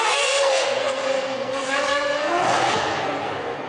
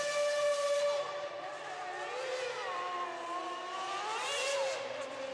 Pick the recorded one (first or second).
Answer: second